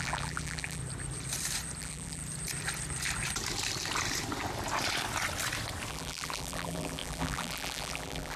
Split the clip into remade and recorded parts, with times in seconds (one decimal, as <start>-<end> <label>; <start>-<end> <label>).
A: 0.0-0.8 remade; 0.8-1.8 recorded; 1.8-2.2 remade; 2.2-5.9 recorded; 5.9-8.4 remade